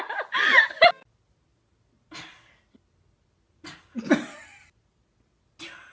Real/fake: real